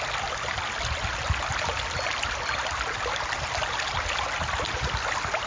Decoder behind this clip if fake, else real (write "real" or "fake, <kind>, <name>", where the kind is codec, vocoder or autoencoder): real